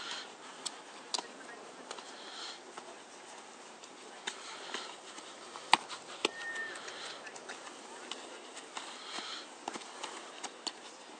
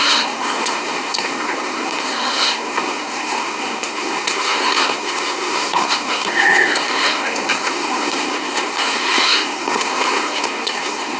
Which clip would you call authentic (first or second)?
first